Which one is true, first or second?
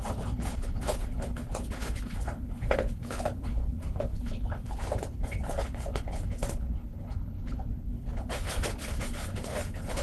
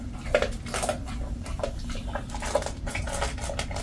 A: second